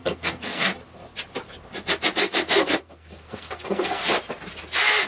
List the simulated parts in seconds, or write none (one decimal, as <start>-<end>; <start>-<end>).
0.0-0.7; 2.2-4.0